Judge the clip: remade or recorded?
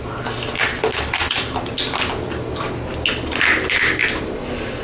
recorded